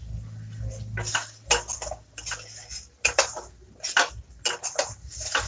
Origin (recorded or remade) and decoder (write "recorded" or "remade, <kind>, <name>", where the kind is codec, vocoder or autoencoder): recorded